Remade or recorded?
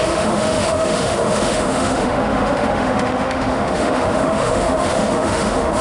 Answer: remade